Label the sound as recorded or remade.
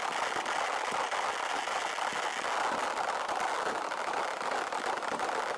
recorded